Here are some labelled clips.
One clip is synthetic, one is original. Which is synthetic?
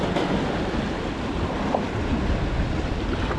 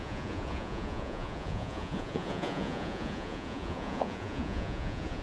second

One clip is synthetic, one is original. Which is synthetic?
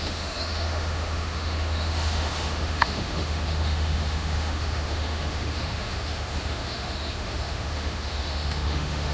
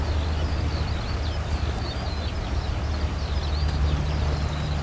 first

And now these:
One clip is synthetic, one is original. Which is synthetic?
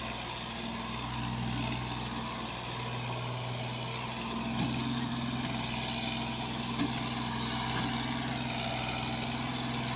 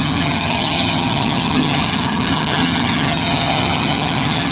second